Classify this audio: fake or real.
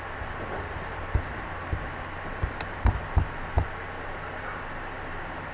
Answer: real